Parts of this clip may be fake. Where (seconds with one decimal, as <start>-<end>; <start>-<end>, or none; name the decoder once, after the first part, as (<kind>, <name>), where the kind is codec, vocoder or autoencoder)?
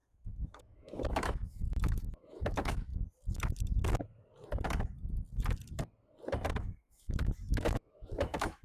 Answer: 0.0-2.9 (autoencoder, DAC-VAE); 6.5-8.6